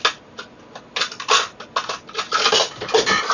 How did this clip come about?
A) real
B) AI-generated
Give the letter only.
A